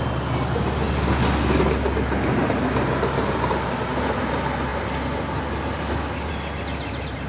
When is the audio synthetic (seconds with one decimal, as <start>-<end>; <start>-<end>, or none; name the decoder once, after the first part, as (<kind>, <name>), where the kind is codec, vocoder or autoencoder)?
none